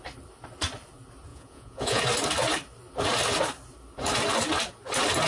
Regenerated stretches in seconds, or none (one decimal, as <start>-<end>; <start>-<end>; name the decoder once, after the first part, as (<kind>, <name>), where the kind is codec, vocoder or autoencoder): 1.3-2.0 (vocoder, Vocos)